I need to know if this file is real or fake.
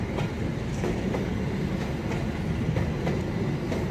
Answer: real